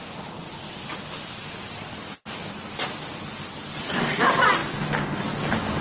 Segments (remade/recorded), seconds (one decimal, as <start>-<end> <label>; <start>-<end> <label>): 0.0-5.8 recorded